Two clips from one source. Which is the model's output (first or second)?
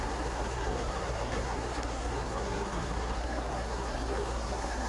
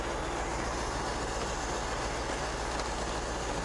first